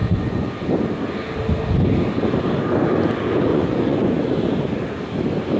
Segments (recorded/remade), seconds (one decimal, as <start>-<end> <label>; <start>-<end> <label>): 0.0-0.5 remade; 0.5-3.5 recorded; 3.5-4.2 remade; 4.2-5.6 recorded